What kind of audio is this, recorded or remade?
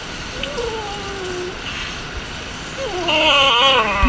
recorded